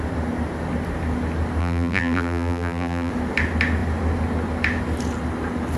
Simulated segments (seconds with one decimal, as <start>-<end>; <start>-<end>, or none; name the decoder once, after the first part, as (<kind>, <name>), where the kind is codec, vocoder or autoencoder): 1.6-3.1 (vocoder, BigVGAN v2)